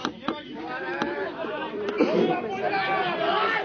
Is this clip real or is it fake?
real